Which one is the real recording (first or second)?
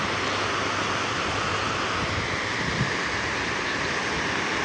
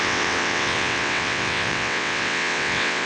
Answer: first